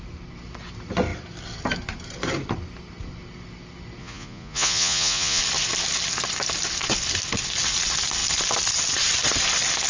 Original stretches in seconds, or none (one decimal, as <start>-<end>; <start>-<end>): 0.0-4.0; 5.4-9.9